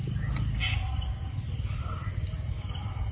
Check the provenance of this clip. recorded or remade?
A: recorded